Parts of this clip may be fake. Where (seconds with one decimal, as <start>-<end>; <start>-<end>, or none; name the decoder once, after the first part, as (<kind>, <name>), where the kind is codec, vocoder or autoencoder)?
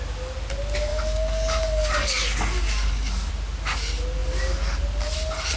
0.9-3.3 (codec, DAC)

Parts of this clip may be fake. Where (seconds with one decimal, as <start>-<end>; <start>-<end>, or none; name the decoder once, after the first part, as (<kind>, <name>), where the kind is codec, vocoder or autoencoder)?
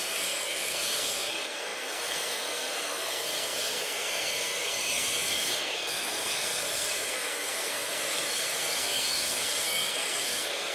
0.0-10.7 (codec, SNAC)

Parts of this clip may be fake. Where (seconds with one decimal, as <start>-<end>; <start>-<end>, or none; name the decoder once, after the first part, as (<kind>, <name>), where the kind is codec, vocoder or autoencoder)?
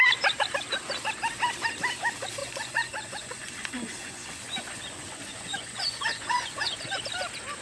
2.4-7.0 (vocoder, Vocos)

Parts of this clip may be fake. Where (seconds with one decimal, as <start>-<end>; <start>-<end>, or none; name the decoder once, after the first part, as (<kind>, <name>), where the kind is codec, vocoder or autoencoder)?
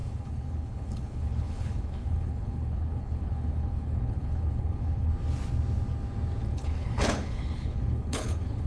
0.0-5.1 (codec, HILCodec); 6.5-8.7